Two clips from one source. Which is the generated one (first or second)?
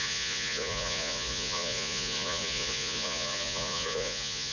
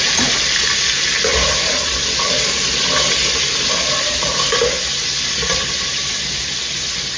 first